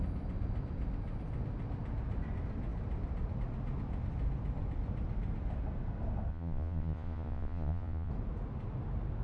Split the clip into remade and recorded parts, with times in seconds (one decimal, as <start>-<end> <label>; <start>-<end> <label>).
0.0-6.3 recorded; 6.3-8.1 remade; 8.1-9.2 recorded